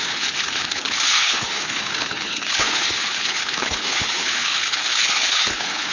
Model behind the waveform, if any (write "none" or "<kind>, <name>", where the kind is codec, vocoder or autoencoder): codec, HILCodec